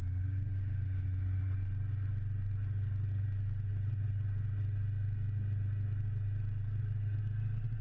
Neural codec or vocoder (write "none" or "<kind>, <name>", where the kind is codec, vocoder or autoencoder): none